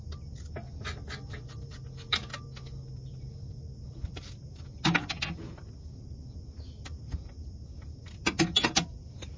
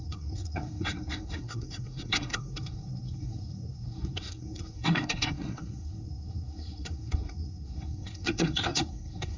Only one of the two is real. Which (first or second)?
first